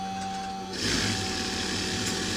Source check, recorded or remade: recorded